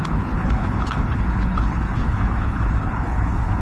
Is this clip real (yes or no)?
no